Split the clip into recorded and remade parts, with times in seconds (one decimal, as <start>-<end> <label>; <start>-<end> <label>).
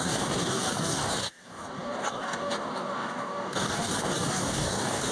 0.0-5.1 remade